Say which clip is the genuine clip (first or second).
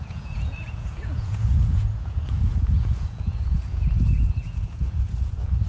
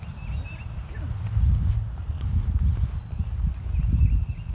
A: second